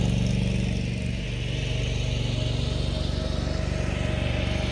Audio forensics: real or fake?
real